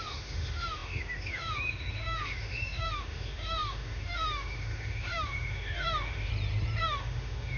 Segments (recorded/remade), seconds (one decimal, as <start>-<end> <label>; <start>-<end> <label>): 0.0-6.3 remade; 6.3-6.8 recorded; 6.8-7.6 remade